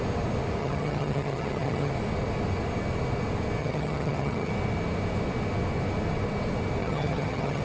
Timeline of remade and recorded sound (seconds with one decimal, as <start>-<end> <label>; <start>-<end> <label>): 0.0-0.6 recorded; 0.6-1.9 remade; 1.9-3.6 recorded; 3.6-4.5 remade; 4.5-6.8 recorded; 6.8-7.6 remade